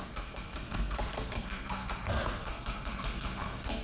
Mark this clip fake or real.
fake